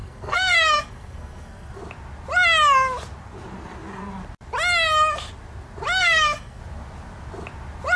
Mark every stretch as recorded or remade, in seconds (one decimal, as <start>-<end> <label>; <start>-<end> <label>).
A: 0.0-1.8 remade; 1.8-6.0 recorded; 6.0-6.6 remade; 6.6-8.0 recorded